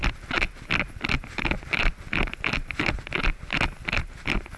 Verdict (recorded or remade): recorded